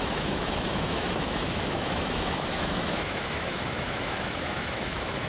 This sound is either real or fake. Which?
fake